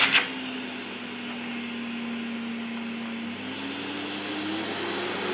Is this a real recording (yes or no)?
yes